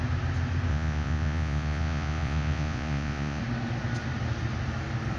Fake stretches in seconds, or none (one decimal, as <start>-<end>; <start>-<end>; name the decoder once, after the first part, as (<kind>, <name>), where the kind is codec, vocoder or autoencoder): 0.7-3.4 (vocoder, Vocos)